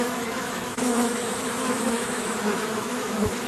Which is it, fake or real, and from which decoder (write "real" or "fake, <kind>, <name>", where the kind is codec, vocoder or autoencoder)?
fake, autoencoder, DAC-VAE